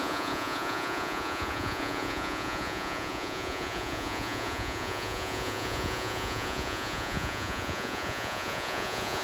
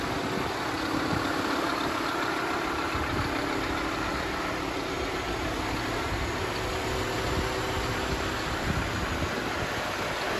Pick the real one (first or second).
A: second